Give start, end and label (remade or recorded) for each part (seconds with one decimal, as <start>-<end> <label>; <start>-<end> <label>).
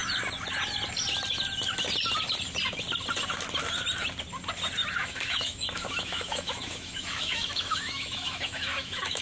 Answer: 0.0-5.0 recorded; 5.0-9.2 remade